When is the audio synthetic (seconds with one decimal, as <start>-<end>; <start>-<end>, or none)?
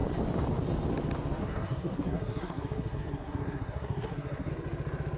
1.4-4.5